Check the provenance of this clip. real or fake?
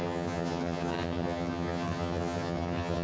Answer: fake